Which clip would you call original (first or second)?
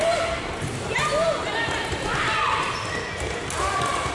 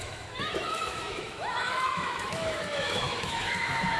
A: first